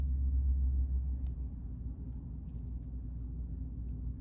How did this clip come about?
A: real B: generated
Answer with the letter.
A